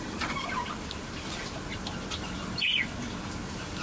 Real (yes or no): no